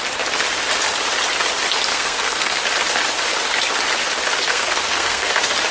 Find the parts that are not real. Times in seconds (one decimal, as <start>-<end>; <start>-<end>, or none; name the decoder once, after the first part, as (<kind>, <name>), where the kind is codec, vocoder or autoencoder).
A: 1.9-2.6 (codec, SNAC); 4.5-5.3